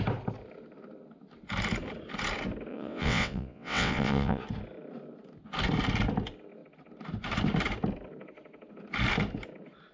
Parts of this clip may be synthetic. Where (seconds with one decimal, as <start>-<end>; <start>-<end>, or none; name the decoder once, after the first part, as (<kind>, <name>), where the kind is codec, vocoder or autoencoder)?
2.7-4.4 (vocoder, WaveNeXt)